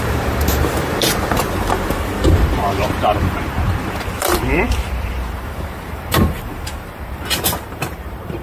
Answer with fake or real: fake